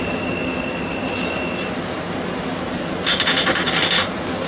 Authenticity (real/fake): real